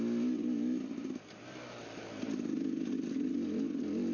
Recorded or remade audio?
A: recorded